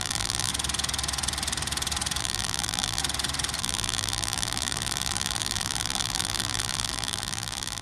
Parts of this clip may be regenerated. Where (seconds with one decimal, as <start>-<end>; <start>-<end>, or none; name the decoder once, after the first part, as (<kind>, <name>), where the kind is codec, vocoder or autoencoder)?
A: 0.0-0.5 (vocoder, BigVGAN v2); 2.2-3.0; 3.6-7.8